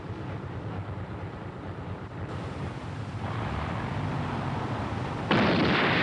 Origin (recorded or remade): remade